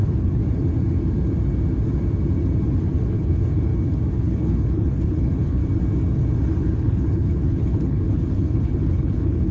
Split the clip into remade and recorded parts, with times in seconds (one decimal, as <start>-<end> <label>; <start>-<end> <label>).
0.0-0.4 remade; 0.4-3.1 recorded; 3.1-3.7 remade; 3.7-4.2 recorded; 4.2-5.6 remade; 5.6-6.6 recorded; 6.6-9.5 remade